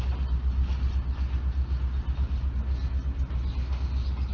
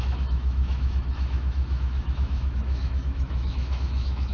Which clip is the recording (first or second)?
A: first